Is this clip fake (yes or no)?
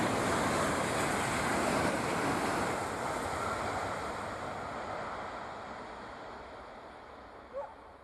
no